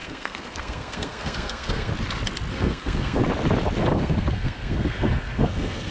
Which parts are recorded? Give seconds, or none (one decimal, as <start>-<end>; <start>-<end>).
1.9-2.5; 3.2-3.8